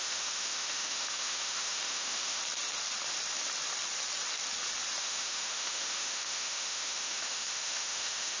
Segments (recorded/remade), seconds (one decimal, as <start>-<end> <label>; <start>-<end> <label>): 0.0-2.4 remade; 2.4-5.0 recorded; 5.0-8.4 remade